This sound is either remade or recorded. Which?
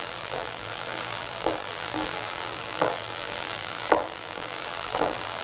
remade